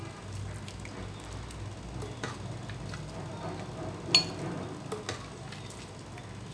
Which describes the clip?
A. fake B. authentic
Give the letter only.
B